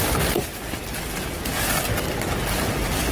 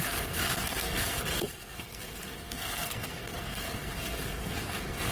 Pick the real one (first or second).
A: first